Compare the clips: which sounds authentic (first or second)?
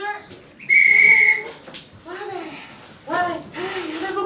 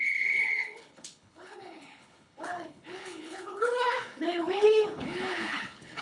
first